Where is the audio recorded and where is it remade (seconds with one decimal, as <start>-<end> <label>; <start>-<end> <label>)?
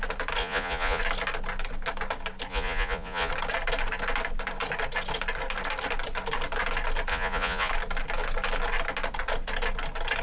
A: 0.0-0.4 recorded; 0.4-1.0 remade; 1.0-2.5 recorded; 2.5-3.3 remade; 3.3-7.1 recorded; 7.1-7.7 remade; 7.7-10.2 recorded